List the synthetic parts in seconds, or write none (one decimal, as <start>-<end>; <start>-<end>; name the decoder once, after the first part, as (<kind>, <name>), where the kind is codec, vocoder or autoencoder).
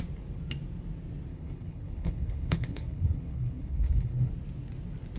1.3-4.3 (codec, HILCodec)